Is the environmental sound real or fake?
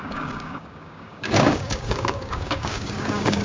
fake